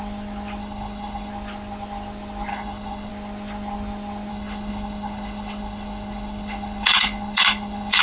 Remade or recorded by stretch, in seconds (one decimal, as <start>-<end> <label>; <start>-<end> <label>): 0.0-0.6 recorded; 0.6-1.3 remade; 1.3-2.5 recorded; 2.5-3.1 remade; 3.1-4.3 recorded; 4.3-8.0 remade